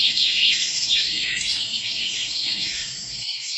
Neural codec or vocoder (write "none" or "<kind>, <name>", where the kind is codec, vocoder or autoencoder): codec, SNAC